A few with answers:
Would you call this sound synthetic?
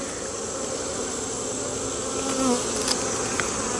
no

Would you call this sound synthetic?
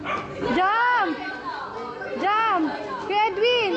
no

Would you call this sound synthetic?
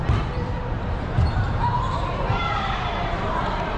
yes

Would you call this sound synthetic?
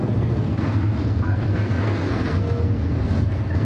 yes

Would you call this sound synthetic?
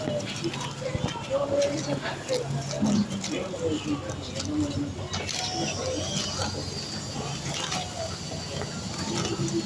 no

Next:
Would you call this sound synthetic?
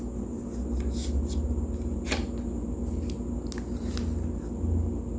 no